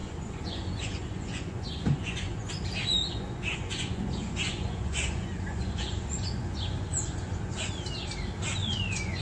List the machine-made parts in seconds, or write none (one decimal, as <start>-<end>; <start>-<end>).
0.0-2.5; 3.1-7.7; 8.6-9.2